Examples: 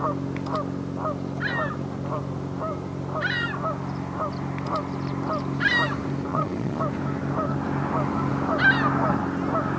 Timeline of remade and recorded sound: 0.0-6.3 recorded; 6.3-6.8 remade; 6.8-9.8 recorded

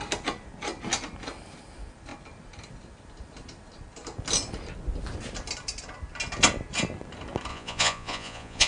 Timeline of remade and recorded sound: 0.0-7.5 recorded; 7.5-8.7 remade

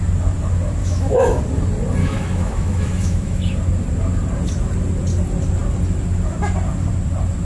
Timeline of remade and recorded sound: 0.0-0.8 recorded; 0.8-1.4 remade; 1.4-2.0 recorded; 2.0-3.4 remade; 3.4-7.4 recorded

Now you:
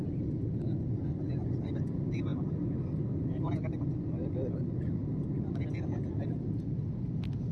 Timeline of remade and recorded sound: 0.0-7.5 recorded

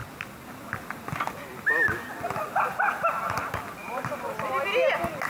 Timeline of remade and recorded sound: 0.0-5.3 recorded

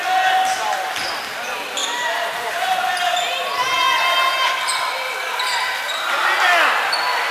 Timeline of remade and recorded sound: 0.0-1.8 recorded; 1.8-2.9 remade; 2.9-7.3 recorded

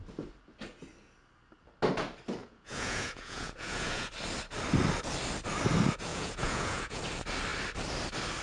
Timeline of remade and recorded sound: 0.0-2.4 recorded; 2.4-4.1 remade; 4.1-6.1 recorded; 6.1-7.0 remade; 7.0-8.4 recorded

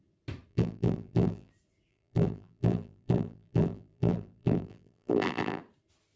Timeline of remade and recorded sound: 0.0-0.5 recorded; 0.5-1.5 remade; 1.5-1.9 recorded; 1.9-5.6 remade; 5.6-6.2 recorded